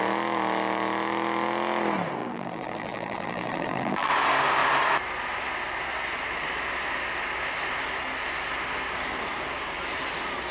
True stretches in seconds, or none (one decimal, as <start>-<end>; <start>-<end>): 0.0-2.2; 4.1-10.5